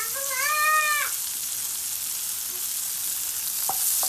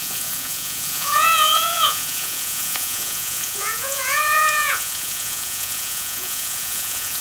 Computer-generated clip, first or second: second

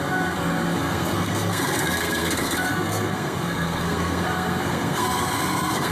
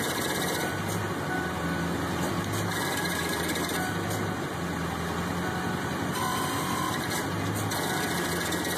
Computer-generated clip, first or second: first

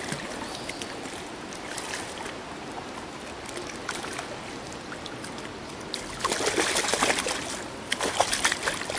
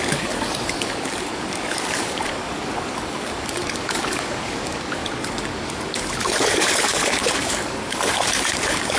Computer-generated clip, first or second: second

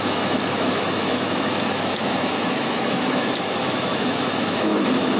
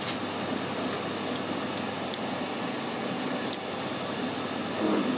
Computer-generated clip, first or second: first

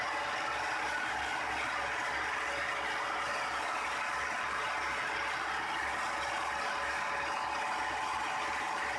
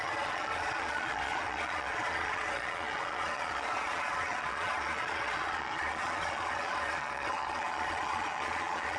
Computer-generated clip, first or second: second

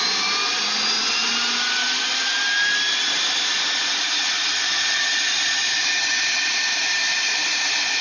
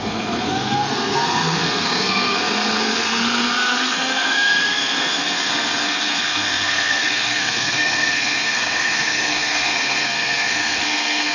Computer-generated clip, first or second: second